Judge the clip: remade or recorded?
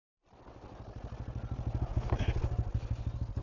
recorded